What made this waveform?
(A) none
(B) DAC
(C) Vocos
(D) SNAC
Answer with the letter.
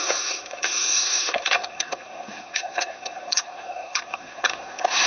D